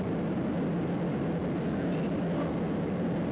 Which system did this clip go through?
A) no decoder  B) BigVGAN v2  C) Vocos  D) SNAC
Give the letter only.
A